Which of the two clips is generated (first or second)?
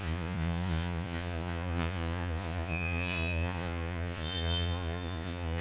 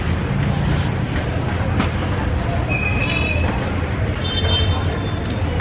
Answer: first